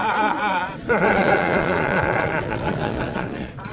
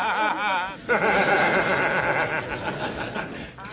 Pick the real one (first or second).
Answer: second